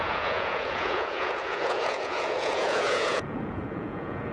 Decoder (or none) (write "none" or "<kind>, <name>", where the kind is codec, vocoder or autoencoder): vocoder, Vocos